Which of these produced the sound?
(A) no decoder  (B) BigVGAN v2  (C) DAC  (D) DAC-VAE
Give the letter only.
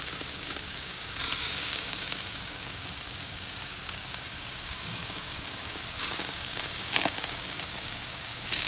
C